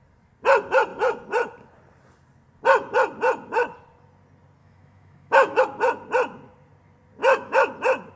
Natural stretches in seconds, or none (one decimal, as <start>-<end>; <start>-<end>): 0.0-4.6; 5.6-7.2; 7.7-8.2